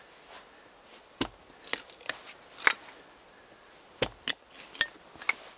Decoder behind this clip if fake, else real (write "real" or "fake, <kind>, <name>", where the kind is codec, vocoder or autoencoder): real